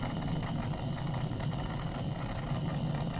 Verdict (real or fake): real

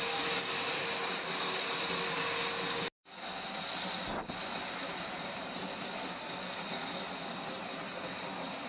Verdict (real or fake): real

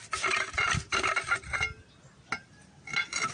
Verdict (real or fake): real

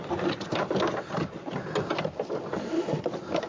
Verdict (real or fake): real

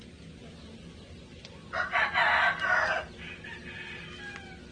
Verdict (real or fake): real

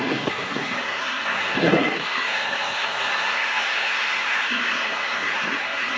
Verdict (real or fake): fake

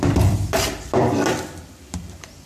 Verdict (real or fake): real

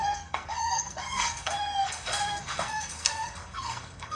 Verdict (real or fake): fake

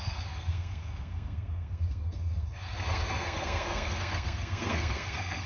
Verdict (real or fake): fake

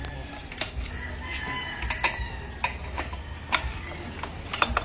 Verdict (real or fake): real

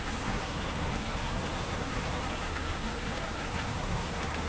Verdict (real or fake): fake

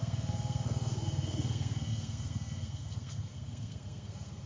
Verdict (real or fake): fake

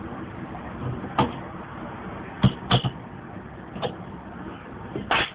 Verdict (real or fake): real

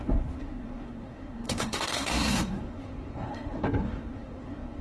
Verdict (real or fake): fake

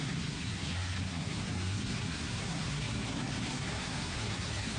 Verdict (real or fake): fake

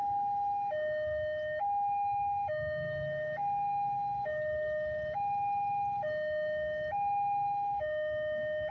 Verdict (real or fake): real